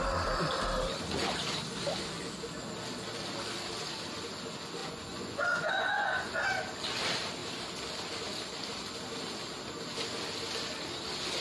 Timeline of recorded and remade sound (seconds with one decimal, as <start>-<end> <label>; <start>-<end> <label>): 0.0-4.8 recorded; 4.8-6.3 remade; 6.3-11.4 recorded